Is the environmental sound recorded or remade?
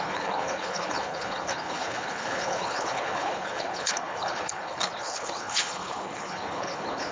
remade